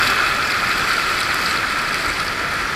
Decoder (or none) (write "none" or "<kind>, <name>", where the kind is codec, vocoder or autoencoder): none